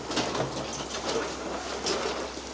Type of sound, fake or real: real